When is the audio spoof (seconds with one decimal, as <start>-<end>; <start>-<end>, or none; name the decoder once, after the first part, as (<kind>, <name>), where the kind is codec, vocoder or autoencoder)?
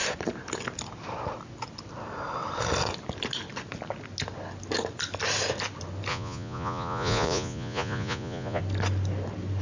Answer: 6.1-8.6 (vocoder, Vocos)